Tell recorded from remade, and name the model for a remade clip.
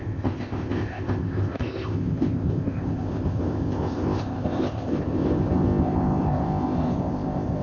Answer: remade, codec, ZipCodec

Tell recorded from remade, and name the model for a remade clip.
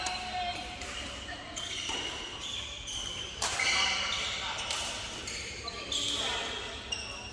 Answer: remade, vocoder, BigVGAN v2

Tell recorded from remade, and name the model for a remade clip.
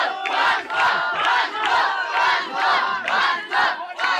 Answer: recorded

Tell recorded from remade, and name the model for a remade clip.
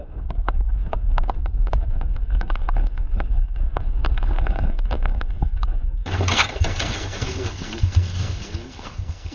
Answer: remade, codec, SNAC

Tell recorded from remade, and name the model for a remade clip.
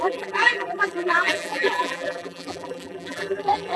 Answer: remade, vocoder, BigVGAN v2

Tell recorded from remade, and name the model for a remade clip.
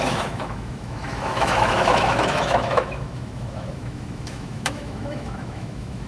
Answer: remade, autoencoder, DAC-VAE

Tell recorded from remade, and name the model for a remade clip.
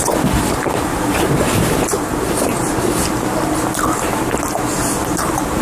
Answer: remade, vocoder, BigVGAN v2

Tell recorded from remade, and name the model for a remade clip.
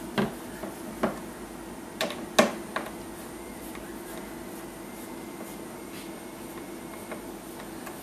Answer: recorded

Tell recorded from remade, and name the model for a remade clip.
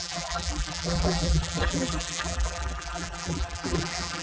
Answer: remade, vocoder, BigVGAN v2